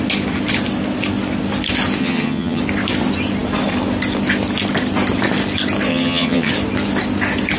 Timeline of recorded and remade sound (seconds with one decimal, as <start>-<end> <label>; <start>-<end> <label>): 0.0-2.0 recorded; 2.0-2.6 remade; 2.6-5.9 recorded; 5.9-6.5 remade; 6.5-7.6 recorded